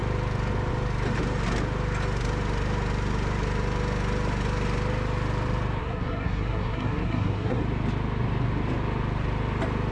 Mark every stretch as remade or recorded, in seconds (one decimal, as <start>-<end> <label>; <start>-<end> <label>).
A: 0.0-5.8 recorded; 5.8-7.6 remade; 7.6-9.9 recorded